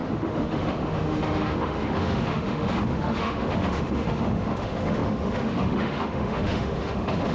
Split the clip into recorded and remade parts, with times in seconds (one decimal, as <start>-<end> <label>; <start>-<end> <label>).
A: 0.0-7.3 remade